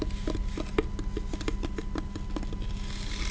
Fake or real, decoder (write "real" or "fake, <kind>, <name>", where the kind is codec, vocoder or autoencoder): real